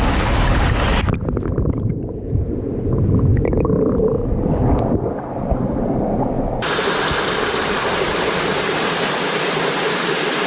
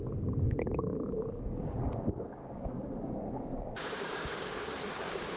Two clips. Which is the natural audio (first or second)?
first